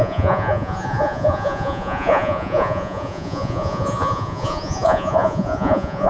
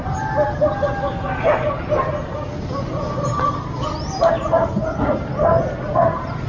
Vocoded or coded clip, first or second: first